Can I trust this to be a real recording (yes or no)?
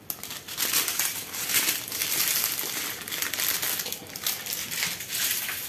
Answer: yes